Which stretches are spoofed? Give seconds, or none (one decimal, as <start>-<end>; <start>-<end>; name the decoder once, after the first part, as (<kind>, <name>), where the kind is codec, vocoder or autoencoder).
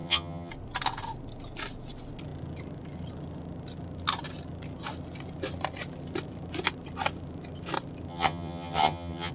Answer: 0.0-0.5 (vocoder, HiFi-GAN); 8.1-9.3